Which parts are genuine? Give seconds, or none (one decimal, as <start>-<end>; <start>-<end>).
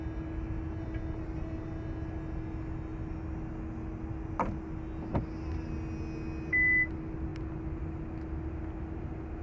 0.0-9.4